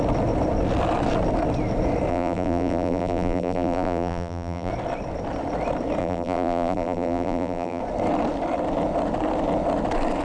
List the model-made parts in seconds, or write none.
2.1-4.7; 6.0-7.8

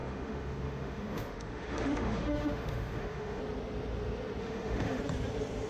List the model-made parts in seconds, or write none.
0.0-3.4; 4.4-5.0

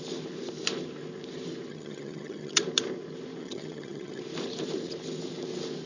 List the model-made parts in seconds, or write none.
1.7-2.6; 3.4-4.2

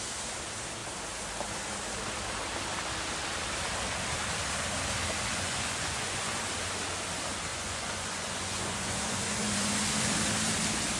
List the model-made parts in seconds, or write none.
5.3-6.4; 7.5-10.1